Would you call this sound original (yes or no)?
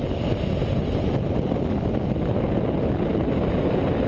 yes